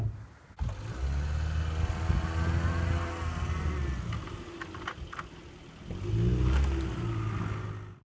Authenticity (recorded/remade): recorded